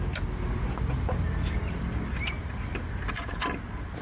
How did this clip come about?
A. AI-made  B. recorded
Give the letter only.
B